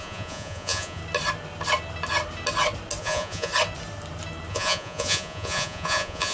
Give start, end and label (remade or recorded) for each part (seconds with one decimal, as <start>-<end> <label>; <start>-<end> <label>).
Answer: 0.0-1.0 remade; 1.0-3.0 recorded; 3.0-3.5 remade; 3.5-4.5 recorded; 4.5-6.3 remade